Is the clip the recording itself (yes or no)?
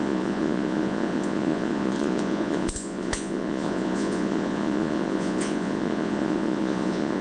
no